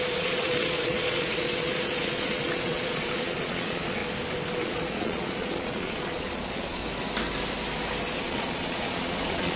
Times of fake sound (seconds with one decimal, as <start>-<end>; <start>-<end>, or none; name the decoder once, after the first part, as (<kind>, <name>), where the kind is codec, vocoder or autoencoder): 0.0-4.0 (vocoder, Vocos); 4.6-6.8; 8.2-9.6